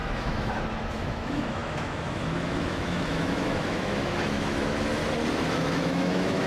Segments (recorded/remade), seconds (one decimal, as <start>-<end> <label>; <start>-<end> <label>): 0.0-5.0 remade; 5.0-5.5 recorded; 5.5-6.5 remade